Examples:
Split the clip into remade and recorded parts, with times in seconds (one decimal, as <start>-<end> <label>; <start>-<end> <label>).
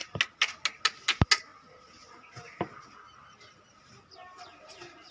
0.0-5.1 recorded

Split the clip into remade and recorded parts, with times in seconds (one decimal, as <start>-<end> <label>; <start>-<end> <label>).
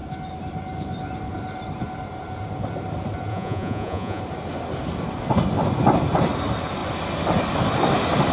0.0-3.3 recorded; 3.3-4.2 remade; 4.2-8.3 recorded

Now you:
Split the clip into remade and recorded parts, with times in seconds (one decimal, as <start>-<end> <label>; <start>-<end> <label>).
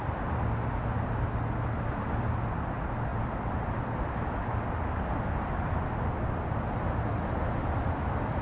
0.0-8.4 recorded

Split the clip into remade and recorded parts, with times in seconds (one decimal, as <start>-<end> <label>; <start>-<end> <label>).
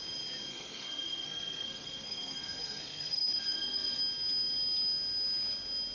0.0-0.5 recorded; 0.5-4.0 remade; 4.0-5.9 recorded